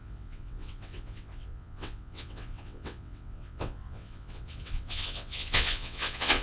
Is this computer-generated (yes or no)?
yes